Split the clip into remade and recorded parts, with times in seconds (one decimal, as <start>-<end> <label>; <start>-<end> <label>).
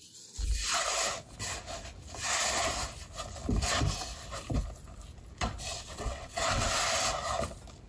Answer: 0.0-5.7 recorded; 5.7-6.8 remade; 6.8-7.9 recorded